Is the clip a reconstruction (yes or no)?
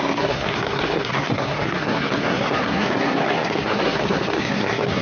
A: yes